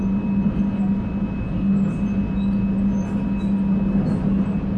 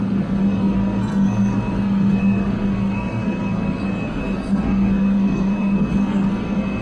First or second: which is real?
first